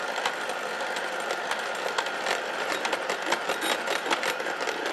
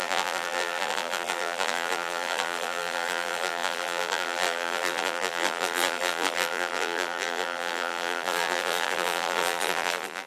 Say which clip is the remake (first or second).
second